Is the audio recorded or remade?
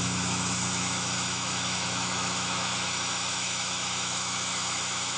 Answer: remade